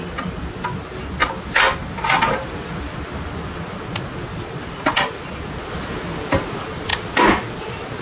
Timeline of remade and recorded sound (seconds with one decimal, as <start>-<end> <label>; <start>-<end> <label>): 0.0-8.0 recorded